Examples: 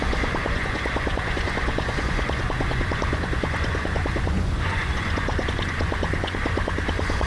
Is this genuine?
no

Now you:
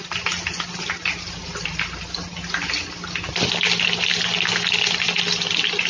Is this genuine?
yes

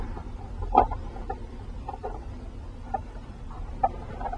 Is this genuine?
no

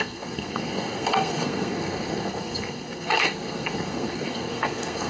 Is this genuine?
no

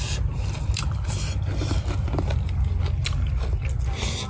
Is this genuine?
yes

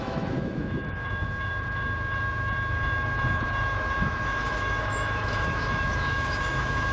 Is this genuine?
no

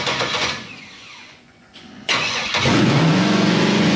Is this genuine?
no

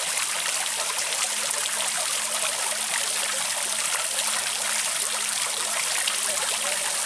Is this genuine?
yes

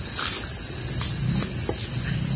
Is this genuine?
yes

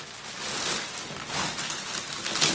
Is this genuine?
yes